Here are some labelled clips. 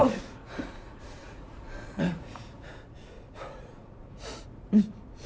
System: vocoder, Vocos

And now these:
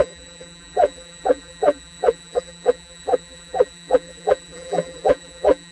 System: vocoder, BigVGAN v2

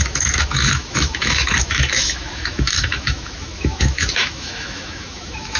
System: autoencoder, DAC-VAE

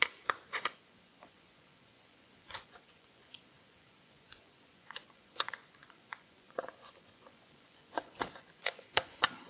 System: vocoder, Vocos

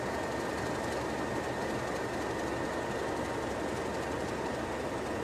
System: none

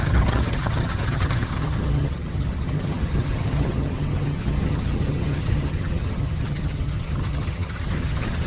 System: vocoder, HiFi-GAN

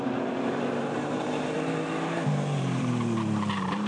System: vocoder, BigVGAN v2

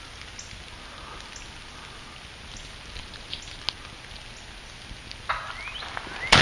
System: none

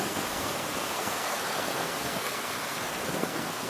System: codec, SNAC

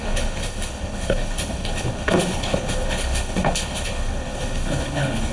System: codec, HILCodec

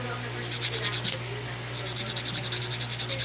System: none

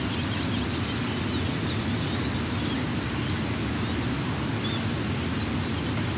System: none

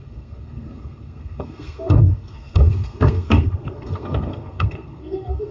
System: codec, SNAC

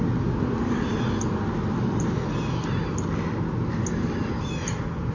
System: none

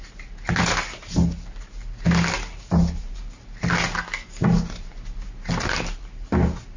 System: none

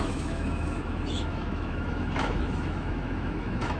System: autoencoder, DAC-VAE